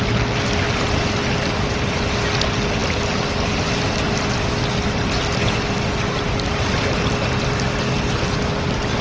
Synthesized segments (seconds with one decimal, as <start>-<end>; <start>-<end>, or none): none

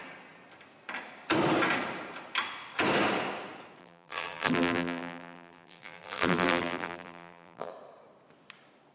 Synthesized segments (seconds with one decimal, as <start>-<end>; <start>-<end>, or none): 3.8-7.7

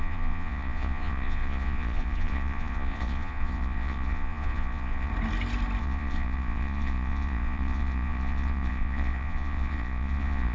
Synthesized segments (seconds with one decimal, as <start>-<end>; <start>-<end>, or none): 0.0-5.1; 5.8-10.5

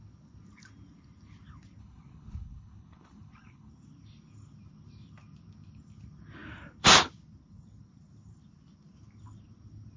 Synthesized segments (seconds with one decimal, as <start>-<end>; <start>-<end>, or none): 1.8-3.7